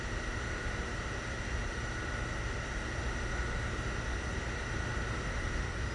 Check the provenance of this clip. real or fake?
real